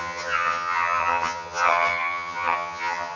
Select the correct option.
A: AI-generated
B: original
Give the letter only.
A